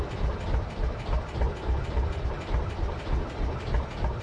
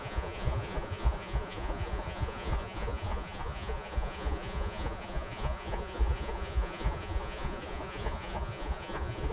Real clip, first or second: first